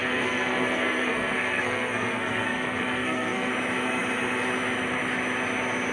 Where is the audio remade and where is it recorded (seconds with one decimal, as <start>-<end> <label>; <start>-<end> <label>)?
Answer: 0.0-3.5 remade; 3.5-5.9 recorded